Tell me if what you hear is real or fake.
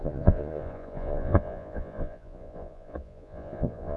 fake